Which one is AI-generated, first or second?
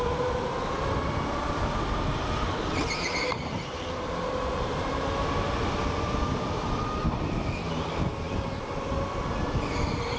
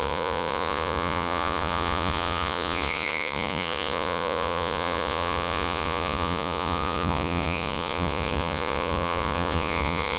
second